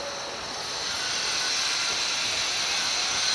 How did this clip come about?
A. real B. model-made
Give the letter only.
A